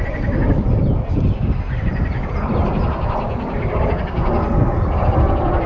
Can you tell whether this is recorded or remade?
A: recorded